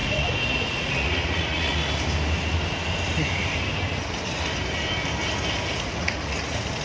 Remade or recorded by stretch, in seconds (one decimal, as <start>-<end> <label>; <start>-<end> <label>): 0.0-1.8 remade; 1.8-5.8 recorded; 5.8-6.8 remade